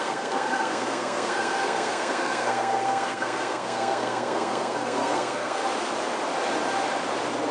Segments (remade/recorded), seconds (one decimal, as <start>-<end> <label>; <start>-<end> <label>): 0.0-5.6 remade; 5.6-7.5 recorded